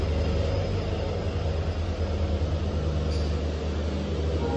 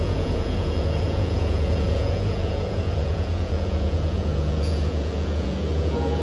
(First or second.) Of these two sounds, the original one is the first